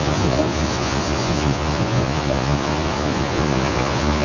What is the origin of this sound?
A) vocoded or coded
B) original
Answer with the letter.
A